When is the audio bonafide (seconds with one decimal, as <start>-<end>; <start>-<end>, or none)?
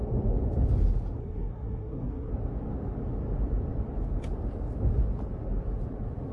0.0-1.2; 2.3-6.3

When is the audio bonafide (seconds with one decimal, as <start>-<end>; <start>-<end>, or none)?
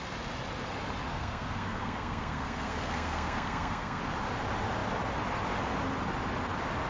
0.0-1.1; 4.0-6.9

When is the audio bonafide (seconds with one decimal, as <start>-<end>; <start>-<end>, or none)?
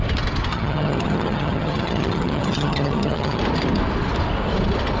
0.0-0.5; 3.4-5.0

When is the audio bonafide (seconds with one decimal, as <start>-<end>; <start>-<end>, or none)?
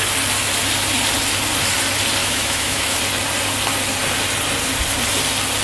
0.0-2.2; 3.0-5.6